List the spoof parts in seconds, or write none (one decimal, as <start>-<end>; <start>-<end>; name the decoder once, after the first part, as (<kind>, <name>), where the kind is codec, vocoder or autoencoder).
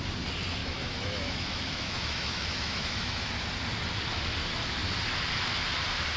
0.6-3.3 (autoencoder, DAC-VAE)